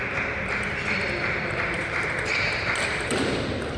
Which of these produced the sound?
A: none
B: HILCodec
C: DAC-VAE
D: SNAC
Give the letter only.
A